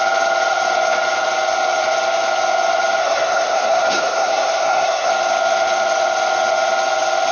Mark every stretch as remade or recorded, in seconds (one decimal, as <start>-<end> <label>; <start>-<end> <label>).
0.0-3.0 recorded; 3.0-5.1 remade; 5.1-7.3 recorded

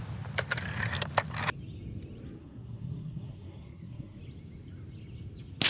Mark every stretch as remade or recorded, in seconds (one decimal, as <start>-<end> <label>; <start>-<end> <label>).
0.0-2.4 recorded; 2.4-4.2 remade; 4.2-5.7 recorded

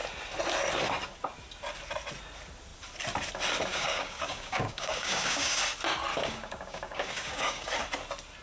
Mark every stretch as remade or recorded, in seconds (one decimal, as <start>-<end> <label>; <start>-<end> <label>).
0.0-3.7 recorded; 3.7-5.6 remade; 5.6-6.1 recorded; 6.1-7.7 remade; 7.7-8.4 recorded

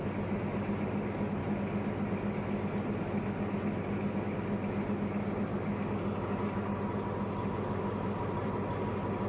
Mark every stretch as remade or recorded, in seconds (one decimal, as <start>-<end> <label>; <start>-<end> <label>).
0.0-9.3 recorded

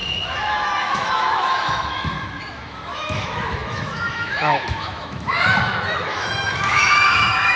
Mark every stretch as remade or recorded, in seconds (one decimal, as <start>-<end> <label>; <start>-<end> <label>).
0.0-7.6 remade

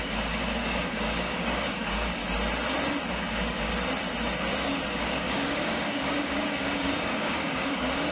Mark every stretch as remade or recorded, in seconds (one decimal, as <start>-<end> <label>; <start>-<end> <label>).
0.0-2.2 remade; 2.2-3.1 recorded; 3.1-3.7 remade; 3.7-4.9 recorded; 4.9-8.1 remade